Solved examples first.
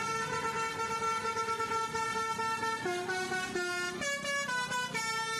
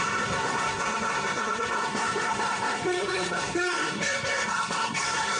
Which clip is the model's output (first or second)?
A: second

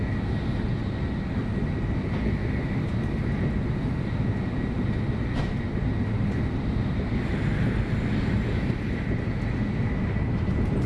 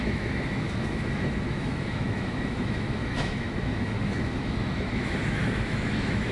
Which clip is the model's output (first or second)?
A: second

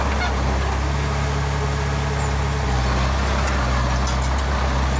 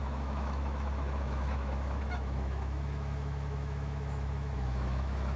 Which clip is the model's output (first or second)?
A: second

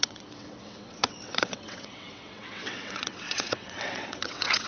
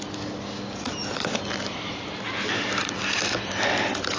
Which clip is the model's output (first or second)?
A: first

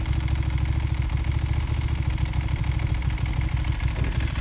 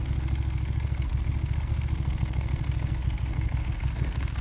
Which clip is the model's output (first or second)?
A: second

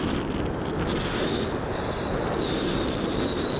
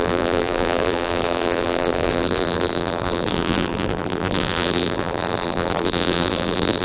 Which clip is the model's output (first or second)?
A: second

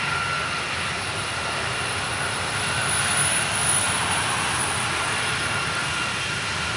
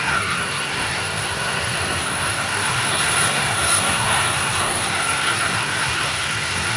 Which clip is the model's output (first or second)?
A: second